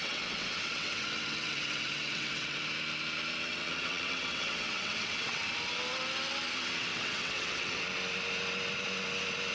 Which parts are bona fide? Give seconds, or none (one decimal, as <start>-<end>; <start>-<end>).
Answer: 2.6-3.5; 5.4-6.9; 7.8-9.5